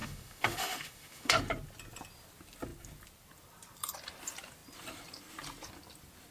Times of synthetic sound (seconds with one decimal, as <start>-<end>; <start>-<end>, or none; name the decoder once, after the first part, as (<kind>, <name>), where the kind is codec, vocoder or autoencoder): 0.0-1.4 (autoencoder, DAC-VAE)